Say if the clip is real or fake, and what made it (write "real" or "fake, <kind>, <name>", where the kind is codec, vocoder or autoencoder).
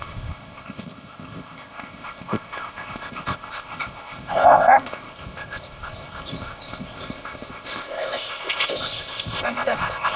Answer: fake, codec, ZipCodec